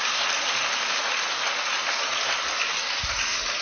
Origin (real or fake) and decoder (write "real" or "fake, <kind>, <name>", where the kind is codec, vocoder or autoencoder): real